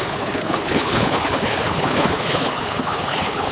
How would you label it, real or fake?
fake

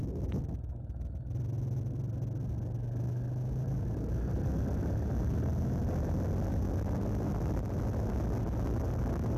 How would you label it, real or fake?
real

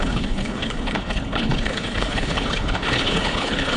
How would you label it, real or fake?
fake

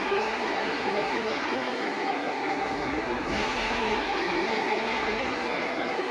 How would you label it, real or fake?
fake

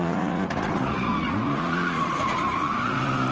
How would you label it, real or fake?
fake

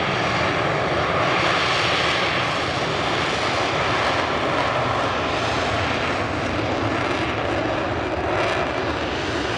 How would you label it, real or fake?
real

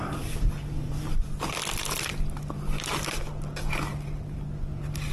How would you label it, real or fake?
real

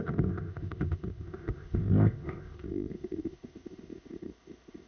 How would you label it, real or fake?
fake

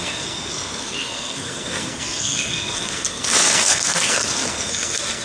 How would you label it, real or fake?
fake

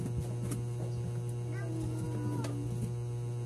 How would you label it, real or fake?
real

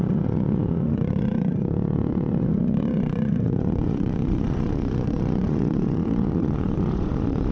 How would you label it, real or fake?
fake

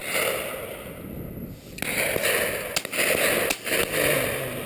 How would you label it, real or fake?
real